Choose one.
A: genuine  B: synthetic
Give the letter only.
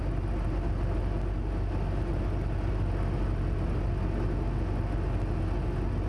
A